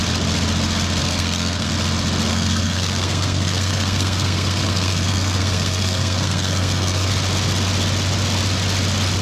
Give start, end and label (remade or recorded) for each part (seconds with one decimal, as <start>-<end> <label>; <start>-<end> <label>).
0.0-1.0 recorded; 1.0-1.7 remade; 1.7-2.3 recorded; 2.3-7.1 remade; 7.1-9.2 recorded